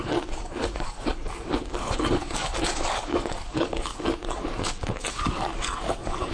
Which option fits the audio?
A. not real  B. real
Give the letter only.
A